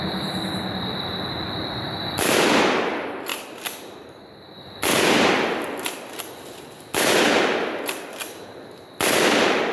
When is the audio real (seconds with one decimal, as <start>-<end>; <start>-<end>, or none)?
0.0-9.7